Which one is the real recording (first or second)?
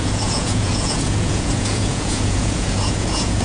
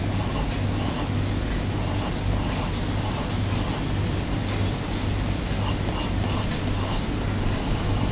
second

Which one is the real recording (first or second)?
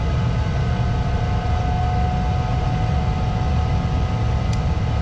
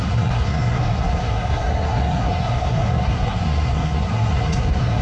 first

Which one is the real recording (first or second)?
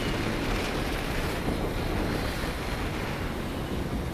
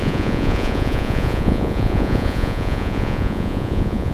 first